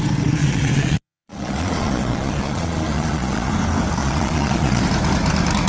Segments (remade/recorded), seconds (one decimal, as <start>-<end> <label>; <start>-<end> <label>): 0.0-0.4 recorded; 0.4-3.5 remade; 3.5-4.0 recorded; 4.0-4.8 remade; 4.8-5.7 recorded